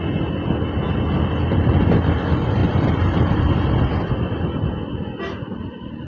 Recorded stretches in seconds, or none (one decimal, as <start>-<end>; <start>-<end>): 0.0-2.6; 3.8-6.1